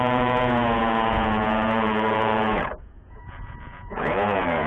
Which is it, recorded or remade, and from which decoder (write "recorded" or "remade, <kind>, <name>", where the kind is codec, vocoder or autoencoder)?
remade, vocoder, Vocos